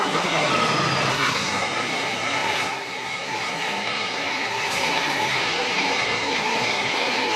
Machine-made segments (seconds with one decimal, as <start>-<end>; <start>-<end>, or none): 0.0-0.5; 1.1-7.4